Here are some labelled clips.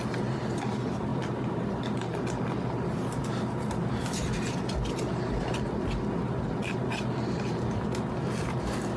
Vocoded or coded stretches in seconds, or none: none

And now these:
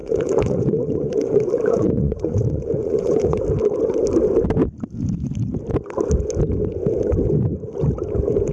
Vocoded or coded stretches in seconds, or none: 0.0-3.4 (vocoder, Vocos)

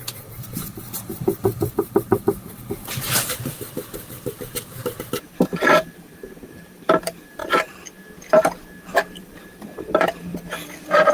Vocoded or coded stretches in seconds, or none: 0.0-7.4 (vocoder, BigVGAN v2); 8.8-11.1

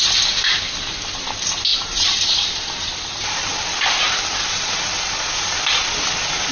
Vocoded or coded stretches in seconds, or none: 1.7-4.7 (vocoder, BigVGAN v2)

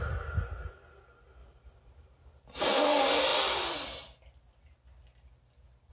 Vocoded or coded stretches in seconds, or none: 1.4-2.8 (vocoder, BigVGAN v2)

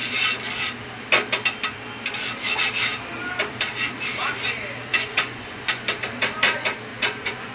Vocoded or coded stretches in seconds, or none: 4.9-6.0 (vocoder, Vocos); 6.9-7.5

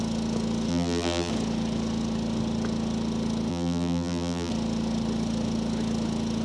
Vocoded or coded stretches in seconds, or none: 0.7-1.3 (vocoder, BigVGAN v2); 3.5-4.5

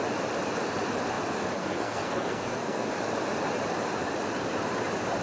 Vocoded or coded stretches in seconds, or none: 1.6-2.9 (codec, SNAC)